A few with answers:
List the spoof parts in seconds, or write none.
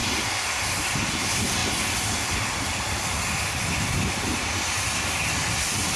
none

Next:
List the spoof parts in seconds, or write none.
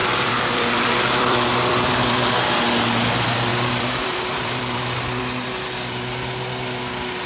0.0-2.3 (vocoder, BigVGAN v2); 3.5-5.2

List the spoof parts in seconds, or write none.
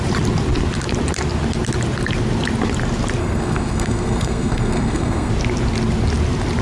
3.2-5.3 (codec, SNAC)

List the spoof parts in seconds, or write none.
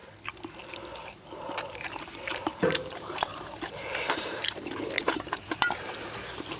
1.1-6.6 (vocoder, BigVGAN v2)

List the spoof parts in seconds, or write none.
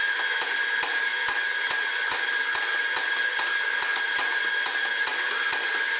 none